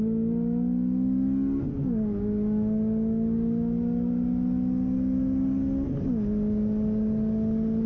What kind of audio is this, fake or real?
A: real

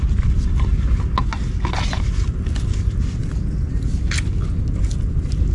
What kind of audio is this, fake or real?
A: real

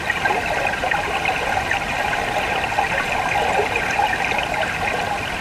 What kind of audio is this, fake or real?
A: real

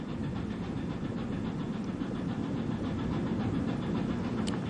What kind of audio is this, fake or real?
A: real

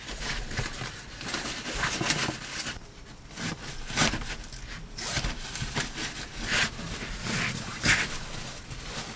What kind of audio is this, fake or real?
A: real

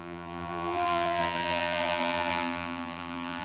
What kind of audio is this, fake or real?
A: fake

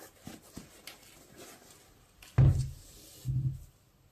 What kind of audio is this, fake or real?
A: real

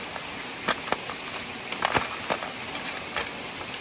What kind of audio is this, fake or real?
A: real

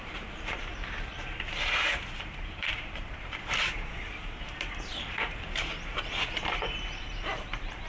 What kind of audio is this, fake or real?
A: fake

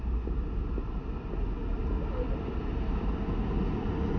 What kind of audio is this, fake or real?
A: real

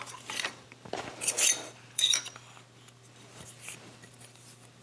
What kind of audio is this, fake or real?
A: fake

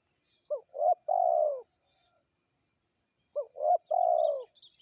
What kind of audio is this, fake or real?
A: real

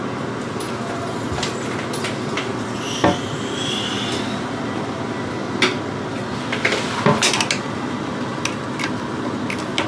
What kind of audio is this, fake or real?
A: real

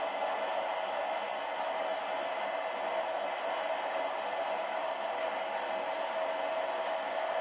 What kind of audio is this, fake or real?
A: real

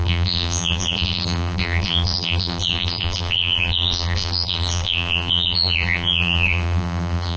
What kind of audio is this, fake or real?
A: fake